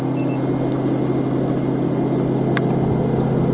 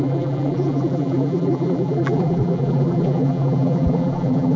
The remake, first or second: second